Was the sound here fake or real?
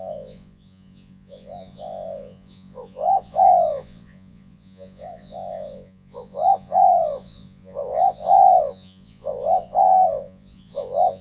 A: fake